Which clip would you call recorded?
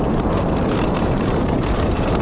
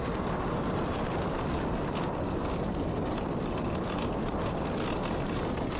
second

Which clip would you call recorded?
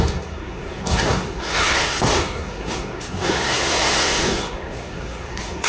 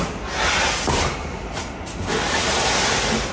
second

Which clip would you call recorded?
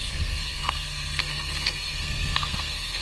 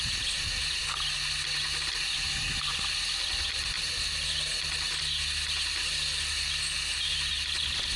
second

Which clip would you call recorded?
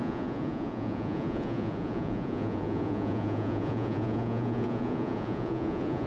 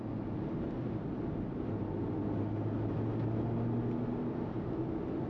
second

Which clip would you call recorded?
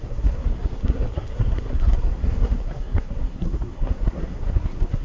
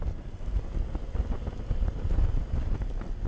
second